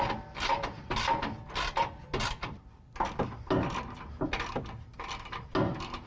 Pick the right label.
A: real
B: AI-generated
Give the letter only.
A